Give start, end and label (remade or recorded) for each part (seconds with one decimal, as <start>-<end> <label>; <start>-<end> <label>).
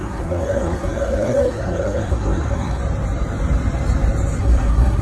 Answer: 0.0-2.8 remade; 2.8-4.4 recorded; 4.4-5.0 remade